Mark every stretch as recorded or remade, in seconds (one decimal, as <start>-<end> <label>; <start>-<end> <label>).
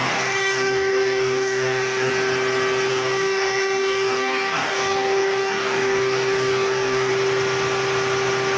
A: 0.0-2.1 remade; 2.1-2.9 recorded; 2.9-7.1 remade; 7.1-8.6 recorded